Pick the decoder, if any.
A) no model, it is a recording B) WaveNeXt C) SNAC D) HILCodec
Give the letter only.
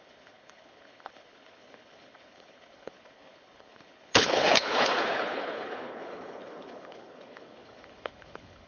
D